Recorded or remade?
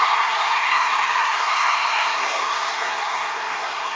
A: remade